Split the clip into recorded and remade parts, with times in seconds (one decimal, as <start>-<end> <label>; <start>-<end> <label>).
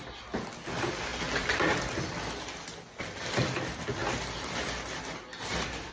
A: 0.0-5.9 recorded